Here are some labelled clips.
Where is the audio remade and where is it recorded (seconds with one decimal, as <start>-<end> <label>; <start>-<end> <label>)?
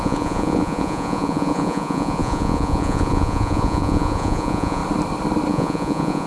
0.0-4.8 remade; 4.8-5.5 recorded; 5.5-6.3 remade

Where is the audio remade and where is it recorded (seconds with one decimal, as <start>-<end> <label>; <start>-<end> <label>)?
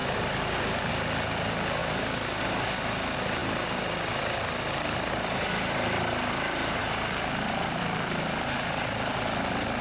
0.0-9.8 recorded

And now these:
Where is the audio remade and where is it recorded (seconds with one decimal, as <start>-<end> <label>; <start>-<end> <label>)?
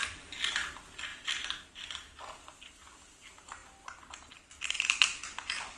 0.0-5.8 recorded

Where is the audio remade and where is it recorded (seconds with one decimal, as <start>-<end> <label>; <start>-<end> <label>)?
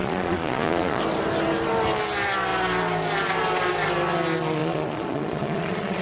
0.0-1.0 remade; 1.0-4.6 recorded; 4.6-6.0 remade